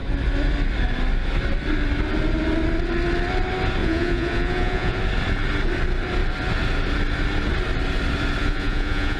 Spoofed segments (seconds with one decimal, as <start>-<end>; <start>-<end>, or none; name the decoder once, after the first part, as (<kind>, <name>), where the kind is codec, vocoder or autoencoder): 3.8-5.0 (vocoder, Vocos); 8.4-9.2